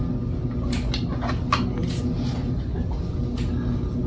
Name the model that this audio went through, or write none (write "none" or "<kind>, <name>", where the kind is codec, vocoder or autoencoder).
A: none